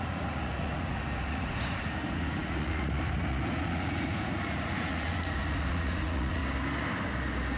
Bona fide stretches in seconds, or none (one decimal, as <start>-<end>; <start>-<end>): 6.4-7.6